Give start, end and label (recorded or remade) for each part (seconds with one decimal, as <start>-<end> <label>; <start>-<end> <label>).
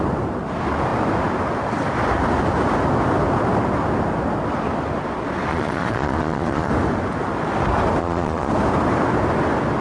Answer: 0.0-5.5 recorded; 5.5-6.7 remade; 6.7-8.0 recorded; 8.0-8.5 remade; 8.5-9.8 recorded